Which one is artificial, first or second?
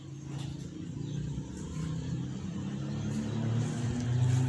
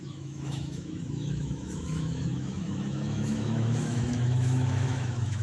second